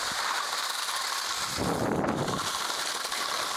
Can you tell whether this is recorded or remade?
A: recorded